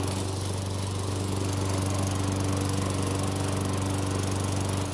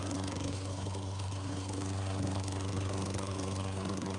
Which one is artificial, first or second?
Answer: second